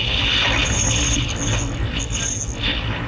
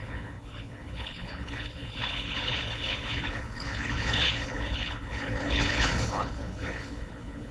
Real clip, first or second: first